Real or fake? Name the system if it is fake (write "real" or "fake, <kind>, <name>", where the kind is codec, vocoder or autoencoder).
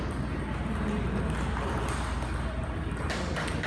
real